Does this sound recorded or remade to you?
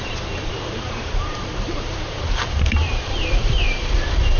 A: remade